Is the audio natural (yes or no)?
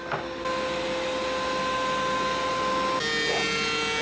yes